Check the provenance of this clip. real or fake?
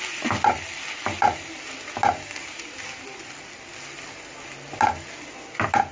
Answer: real